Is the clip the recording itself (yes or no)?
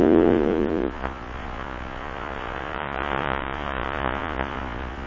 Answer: no